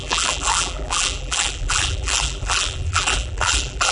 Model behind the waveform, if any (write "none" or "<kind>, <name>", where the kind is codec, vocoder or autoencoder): vocoder, BigVGAN v2